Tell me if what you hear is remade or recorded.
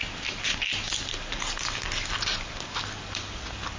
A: recorded